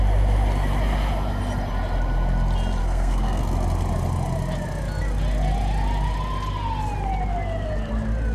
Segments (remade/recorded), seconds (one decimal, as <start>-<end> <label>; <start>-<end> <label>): 0.0-2.8 recorded; 2.8-3.4 remade; 3.4-8.3 recorded